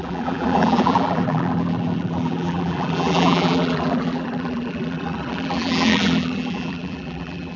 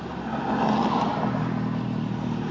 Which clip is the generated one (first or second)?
first